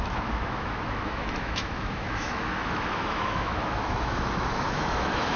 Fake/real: fake